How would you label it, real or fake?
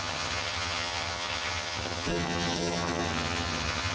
fake